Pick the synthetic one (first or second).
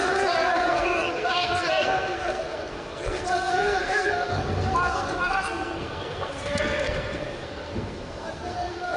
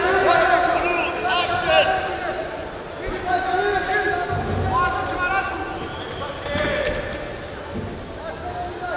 first